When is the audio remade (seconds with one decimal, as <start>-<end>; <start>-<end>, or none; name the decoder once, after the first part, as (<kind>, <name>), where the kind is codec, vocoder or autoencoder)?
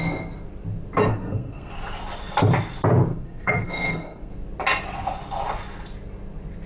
1.1-1.7 (codec, SNAC); 3.1-4.3